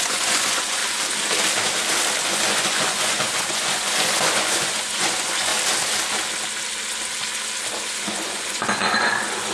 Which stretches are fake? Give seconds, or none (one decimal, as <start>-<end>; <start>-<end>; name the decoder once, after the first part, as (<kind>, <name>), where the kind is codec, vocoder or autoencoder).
0.0-0.8 (vocoder, Vocos); 2.3-5.5; 7.9-9.5